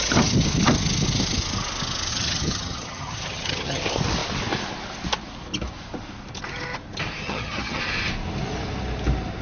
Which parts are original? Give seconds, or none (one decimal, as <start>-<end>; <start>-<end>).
0.0-2.1; 3.8-7.2; 7.8-9.4